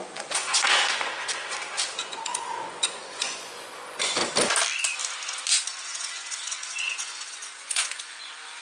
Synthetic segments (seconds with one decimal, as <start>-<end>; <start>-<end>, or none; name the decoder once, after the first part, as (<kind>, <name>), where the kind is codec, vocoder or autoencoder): 0.0-1.3 (vocoder, Vocos); 2.0-4.2; 5.8-8.6